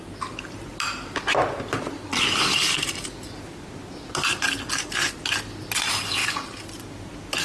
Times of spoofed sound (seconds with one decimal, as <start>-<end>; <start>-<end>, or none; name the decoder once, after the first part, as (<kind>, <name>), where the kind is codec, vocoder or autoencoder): none